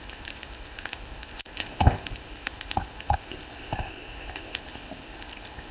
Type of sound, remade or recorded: remade